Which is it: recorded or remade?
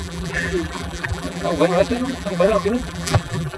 remade